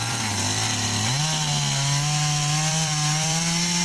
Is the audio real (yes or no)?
no